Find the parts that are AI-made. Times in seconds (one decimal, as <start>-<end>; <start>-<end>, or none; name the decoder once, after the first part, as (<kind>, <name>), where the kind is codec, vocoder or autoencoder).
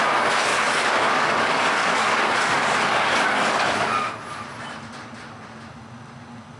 0.5-4.1 (codec, DAC)